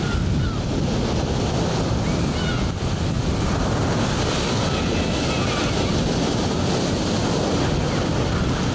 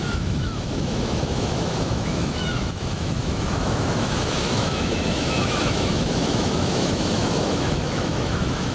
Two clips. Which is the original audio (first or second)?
first